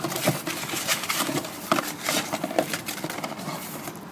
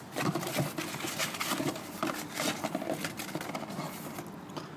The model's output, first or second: first